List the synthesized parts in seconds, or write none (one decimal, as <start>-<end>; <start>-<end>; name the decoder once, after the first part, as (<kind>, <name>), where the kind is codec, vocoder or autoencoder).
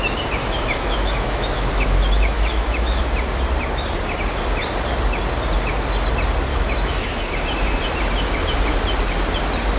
0.4-3.0 (autoencoder, DAC-VAE); 6.5-7.2